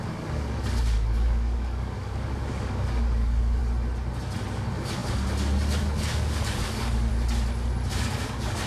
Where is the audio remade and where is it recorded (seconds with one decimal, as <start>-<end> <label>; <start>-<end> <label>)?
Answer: 0.0-3.6 remade; 3.6-4.5 recorded; 4.5-7.1 remade; 7.1-7.9 recorded; 7.9-8.7 remade

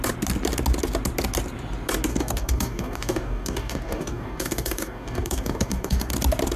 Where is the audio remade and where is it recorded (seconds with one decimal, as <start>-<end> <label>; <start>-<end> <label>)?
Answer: 0.0-2.1 recorded; 2.1-6.1 remade; 6.1-6.6 recorded

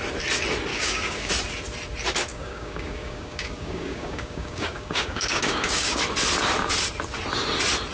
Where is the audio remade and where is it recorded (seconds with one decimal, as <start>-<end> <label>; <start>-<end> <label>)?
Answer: 0.0-0.7 recorded; 0.7-1.3 remade; 1.3-2.3 recorded; 2.3-6.0 remade; 6.0-7.9 recorded

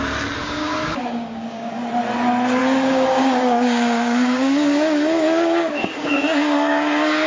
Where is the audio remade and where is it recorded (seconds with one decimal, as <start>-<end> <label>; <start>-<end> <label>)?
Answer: 0.0-0.4 recorded; 0.4-1.8 remade; 1.8-2.6 recorded; 2.6-7.3 remade

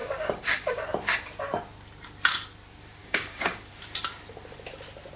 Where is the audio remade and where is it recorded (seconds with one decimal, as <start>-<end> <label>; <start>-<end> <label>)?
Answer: 0.0-0.8 remade; 0.8-3.0 recorded; 3.0-3.7 remade; 3.7-5.2 recorded

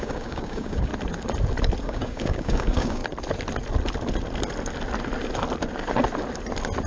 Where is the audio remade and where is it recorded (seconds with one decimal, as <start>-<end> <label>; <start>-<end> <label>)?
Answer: 0.0-0.9 remade; 0.9-1.8 recorded; 1.8-3.0 remade; 3.0-6.9 recorded